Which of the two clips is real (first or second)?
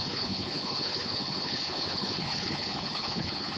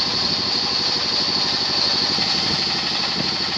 second